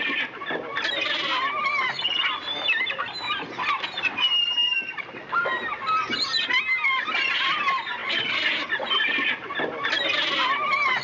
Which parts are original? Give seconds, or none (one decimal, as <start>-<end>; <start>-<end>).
0.0-11.0